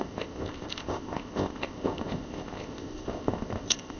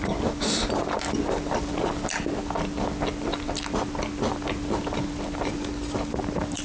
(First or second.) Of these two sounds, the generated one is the first